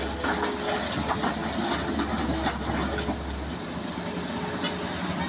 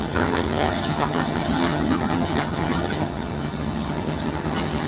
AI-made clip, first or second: second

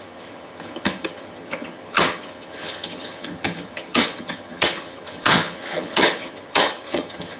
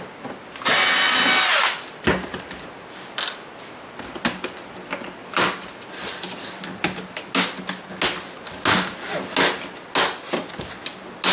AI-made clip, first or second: first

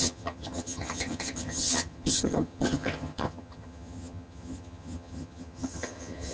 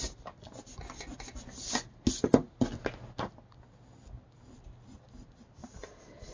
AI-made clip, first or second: first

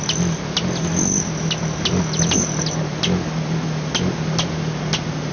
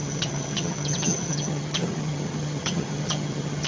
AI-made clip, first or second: second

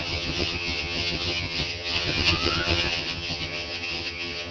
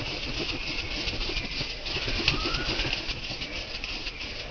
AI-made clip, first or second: first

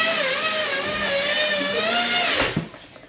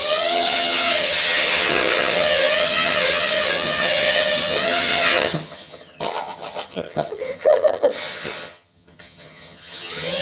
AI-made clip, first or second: second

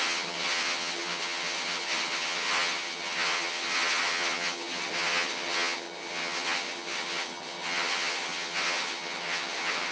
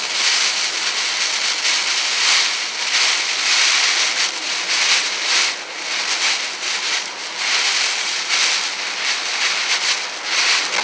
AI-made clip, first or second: first